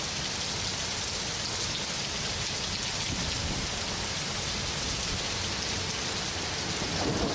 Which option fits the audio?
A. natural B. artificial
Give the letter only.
A